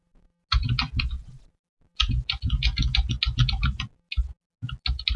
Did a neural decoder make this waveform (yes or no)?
no